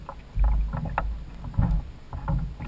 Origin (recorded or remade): recorded